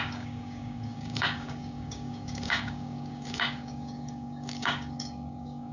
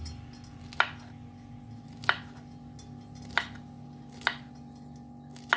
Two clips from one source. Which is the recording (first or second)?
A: second